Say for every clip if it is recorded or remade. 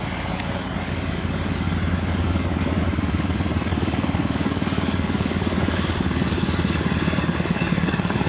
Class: remade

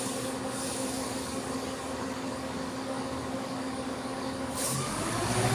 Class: remade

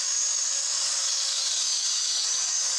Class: remade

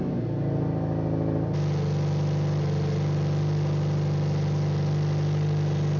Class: recorded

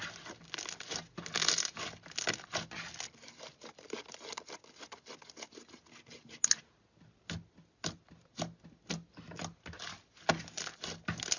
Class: recorded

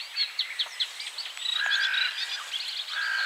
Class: recorded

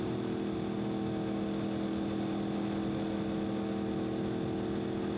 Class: recorded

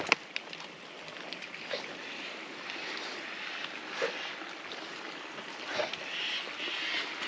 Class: recorded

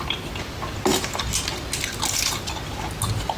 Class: recorded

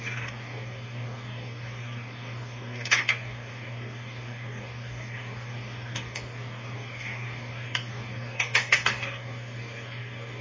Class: remade